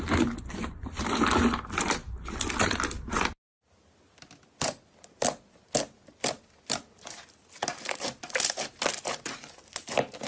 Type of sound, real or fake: real